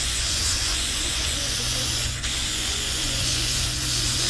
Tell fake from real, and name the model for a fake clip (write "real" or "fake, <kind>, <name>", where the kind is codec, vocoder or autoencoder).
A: fake, vocoder, Vocos